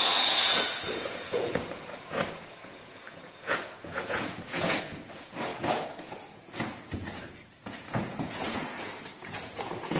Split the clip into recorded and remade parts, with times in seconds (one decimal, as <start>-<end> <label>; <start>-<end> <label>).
0.0-10.0 remade